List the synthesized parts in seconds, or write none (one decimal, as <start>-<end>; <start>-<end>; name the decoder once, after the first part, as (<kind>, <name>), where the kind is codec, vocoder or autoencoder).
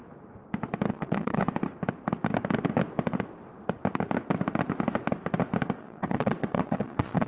0.9-1.4 (vocoder, Vocos); 5.8-7.3